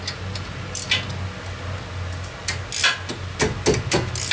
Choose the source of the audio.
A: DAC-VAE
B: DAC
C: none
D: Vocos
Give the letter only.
C